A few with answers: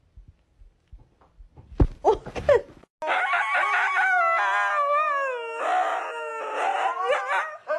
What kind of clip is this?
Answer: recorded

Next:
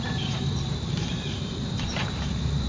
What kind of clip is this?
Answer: remade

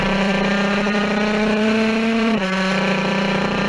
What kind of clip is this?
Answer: remade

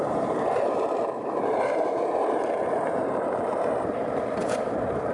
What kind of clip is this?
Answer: remade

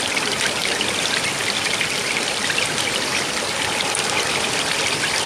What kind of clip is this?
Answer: remade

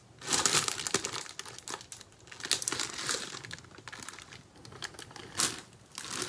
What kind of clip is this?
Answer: recorded